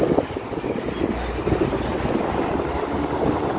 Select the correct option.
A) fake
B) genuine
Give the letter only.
B